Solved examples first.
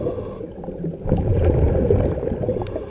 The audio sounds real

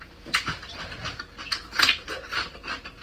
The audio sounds real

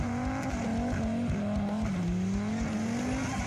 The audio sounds real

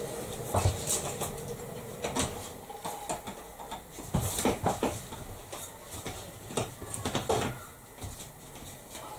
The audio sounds real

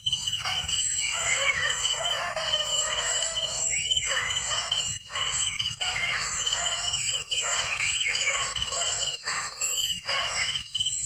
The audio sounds fake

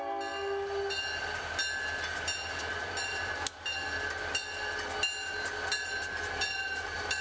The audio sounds real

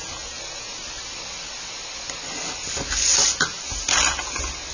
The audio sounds real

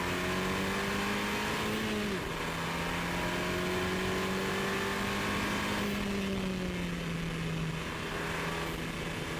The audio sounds real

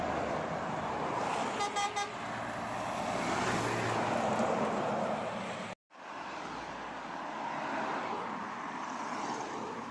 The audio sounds real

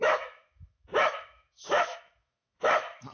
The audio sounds fake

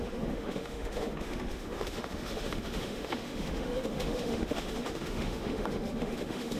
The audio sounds fake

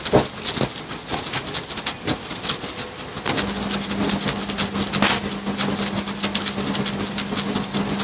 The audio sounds real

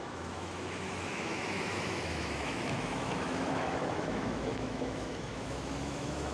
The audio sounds fake